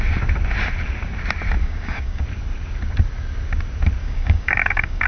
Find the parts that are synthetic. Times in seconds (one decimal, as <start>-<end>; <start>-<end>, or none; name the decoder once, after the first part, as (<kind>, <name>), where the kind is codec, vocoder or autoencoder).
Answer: 1.6-2.2 (codec, DAC); 4.0-5.1